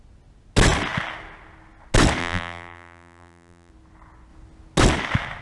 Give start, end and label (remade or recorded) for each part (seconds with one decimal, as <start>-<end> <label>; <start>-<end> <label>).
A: 0.0-2.2 recorded; 2.2-3.7 remade; 3.7-5.4 recorded